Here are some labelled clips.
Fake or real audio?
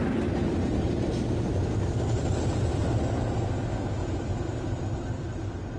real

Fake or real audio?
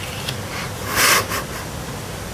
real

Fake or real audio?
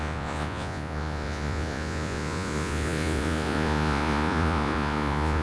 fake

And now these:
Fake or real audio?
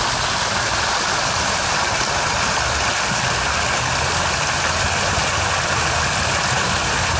real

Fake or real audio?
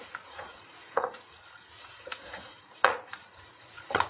fake